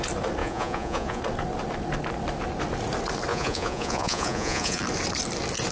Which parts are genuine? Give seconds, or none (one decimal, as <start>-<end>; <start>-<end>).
0.0-0.4; 1.2-3.3; 4.8-5.7